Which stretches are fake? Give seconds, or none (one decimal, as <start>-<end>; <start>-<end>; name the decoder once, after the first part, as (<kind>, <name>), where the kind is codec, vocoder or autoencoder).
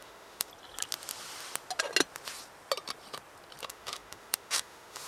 0.0-0.5 (autoencoder, DAC-VAE); 3.6-5.1